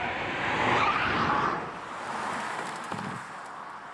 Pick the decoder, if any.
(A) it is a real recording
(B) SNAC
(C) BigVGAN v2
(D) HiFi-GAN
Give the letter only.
A